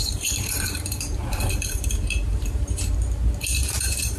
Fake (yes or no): yes